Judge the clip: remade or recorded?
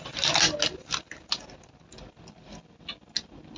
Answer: recorded